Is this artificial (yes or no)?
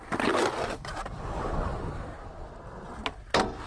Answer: no